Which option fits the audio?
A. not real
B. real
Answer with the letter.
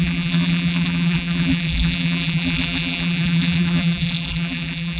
A